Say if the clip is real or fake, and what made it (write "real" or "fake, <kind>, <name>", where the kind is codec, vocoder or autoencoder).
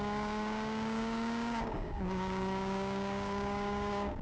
fake, codec, DAC